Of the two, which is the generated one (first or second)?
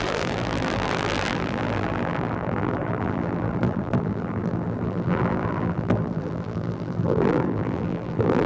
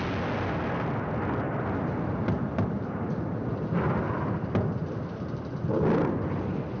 first